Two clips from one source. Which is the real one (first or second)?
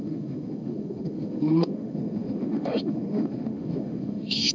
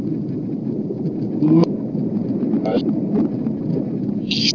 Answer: second